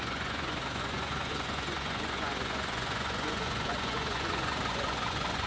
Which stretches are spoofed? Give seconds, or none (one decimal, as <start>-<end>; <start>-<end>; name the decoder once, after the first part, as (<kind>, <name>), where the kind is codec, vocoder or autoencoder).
0.0-5.5 (vocoder, Vocos)